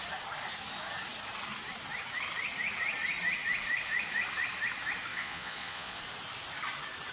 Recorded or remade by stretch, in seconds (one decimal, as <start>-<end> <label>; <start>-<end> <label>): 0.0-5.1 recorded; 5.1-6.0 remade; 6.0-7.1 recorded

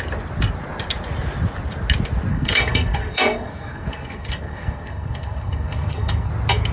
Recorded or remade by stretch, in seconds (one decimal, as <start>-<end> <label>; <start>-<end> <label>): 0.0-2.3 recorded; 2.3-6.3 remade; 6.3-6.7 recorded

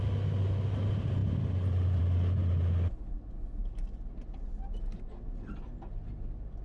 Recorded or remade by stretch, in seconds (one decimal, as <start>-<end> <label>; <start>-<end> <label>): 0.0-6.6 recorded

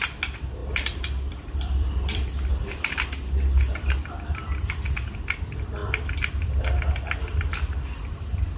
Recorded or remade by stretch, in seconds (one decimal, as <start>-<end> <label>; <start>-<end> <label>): 0.0-0.6 recorded; 0.6-2.5 remade; 2.5-8.6 recorded

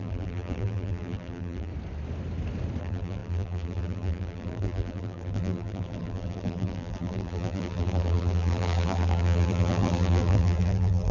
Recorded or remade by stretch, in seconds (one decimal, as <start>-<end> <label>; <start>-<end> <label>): 0.0-1.7 remade; 1.7-2.8 recorded; 2.8-11.1 remade